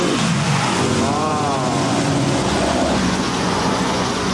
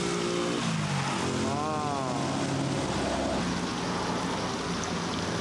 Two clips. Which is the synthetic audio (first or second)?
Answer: first